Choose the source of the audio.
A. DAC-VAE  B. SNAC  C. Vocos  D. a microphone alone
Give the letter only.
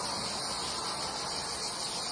D